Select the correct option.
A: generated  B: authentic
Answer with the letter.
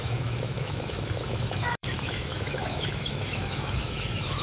A